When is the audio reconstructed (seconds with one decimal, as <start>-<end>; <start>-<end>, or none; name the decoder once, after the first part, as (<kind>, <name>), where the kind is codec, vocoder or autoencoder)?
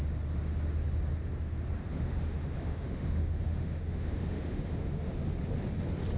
1.9-5.2 (autoencoder, DAC-VAE)